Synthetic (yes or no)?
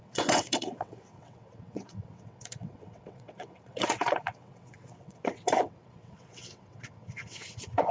yes